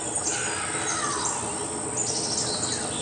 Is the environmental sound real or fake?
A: real